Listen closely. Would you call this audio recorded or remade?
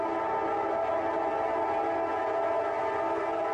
recorded